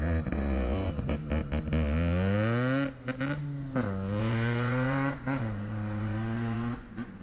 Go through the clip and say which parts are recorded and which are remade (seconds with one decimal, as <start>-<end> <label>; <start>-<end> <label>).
0.0-1.2 remade; 1.2-4.2 recorded; 4.2-7.2 remade

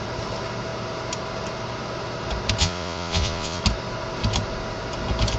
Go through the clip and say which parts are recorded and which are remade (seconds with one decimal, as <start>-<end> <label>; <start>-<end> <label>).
0.0-2.6 recorded; 2.6-3.6 remade; 3.6-5.4 recorded

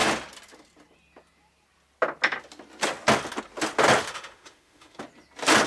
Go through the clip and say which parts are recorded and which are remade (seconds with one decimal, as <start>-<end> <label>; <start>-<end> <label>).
0.0-4.0 recorded; 4.0-5.0 remade; 5.0-5.7 recorded

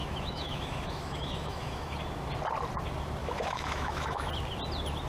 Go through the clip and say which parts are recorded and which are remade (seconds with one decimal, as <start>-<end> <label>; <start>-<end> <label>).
0.0-1.9 remade; 1.9-3.2 recorded; 3.2-4.3 remade; 4.3-5.1 recorded